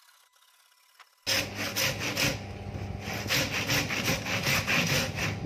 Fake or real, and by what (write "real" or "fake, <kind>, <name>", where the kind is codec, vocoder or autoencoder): real